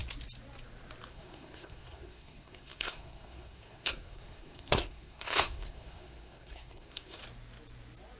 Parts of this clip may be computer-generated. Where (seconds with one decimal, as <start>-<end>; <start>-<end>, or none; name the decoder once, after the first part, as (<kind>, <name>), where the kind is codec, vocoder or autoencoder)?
1.1-7.2 (codec, SNAC)